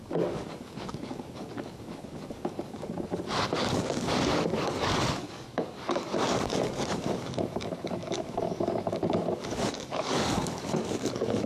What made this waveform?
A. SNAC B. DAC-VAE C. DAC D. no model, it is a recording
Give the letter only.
C